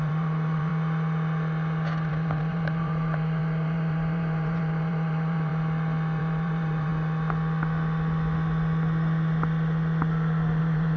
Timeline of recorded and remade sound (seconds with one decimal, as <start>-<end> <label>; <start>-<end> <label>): 0.0-0.7 remade; 0.7-2.1 recorded; 2.1-5.5 remade; 5.5-6.2 recorded; 6.2-6.9 remade; 6.9-10.6 recorded; 10.6-11.0 remade

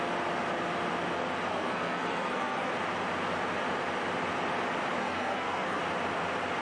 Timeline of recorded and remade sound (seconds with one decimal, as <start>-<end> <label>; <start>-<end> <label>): 0.0-1.5 recorded; 1.5-2.7 remade; 2.7-5.0 recorded; 5.0-5.8 remade; 5.8-6.6 recorded

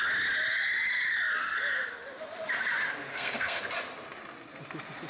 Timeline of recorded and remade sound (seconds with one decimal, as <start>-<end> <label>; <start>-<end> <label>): 0.0-3.1 recorded; 3.1-3.6 remade; 3.6-5.1 recorded